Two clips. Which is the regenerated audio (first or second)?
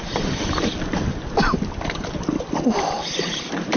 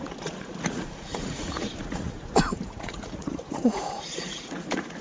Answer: second